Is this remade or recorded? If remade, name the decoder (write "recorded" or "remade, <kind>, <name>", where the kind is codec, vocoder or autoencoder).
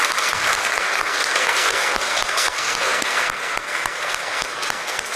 remade, codec, SNAC